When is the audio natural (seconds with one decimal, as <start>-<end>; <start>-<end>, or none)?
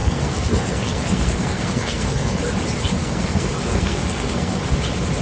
2.4-3.0; 4.6-5.2